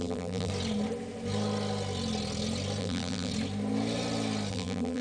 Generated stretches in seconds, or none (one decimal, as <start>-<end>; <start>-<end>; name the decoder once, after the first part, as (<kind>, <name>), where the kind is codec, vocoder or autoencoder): 0.0-0.5 (vocoder, BigVGAN v2); 2.8-3.3; 4.5-5.0